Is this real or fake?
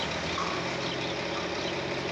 real